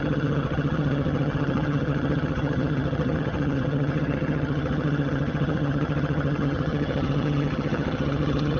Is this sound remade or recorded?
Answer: remade